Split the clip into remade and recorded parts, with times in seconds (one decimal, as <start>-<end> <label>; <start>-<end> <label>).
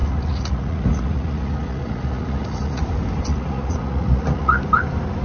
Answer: 0.0-2.8 remade; 2.8-3.3 recorded; 3.3-4.6 remade; 4.6-5.2 recorded